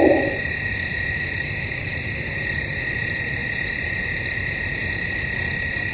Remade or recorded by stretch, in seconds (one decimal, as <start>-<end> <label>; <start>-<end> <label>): 0.0-5.9 remade